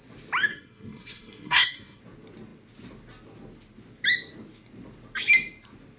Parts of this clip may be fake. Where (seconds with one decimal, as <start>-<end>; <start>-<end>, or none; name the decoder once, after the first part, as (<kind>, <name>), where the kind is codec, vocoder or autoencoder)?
0.5-2.0 (codec, SNAC)